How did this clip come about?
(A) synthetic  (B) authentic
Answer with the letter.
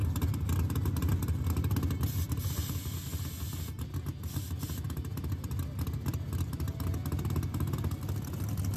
B